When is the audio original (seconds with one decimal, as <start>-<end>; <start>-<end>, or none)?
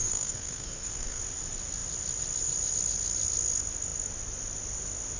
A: 1.2-5.2